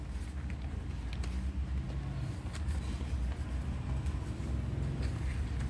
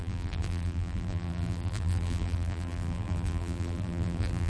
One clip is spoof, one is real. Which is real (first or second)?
first